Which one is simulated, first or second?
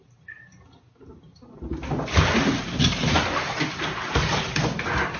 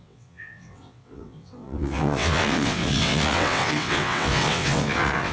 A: second